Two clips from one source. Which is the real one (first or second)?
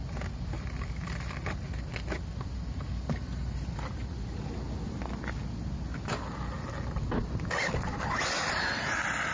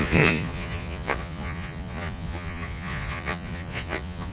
first